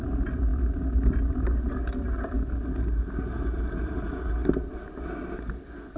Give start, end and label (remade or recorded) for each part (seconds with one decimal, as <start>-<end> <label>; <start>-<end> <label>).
0.0-6.0 recorded